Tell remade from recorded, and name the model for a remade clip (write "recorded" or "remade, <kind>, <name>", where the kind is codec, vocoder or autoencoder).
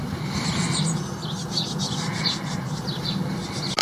recorded